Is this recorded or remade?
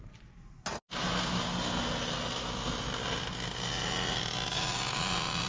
recorded